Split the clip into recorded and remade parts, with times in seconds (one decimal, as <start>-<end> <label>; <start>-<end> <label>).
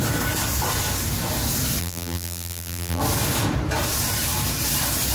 0.0-1.8 recorded; 1.8-3.0 remade; 3.0-5.1 recorded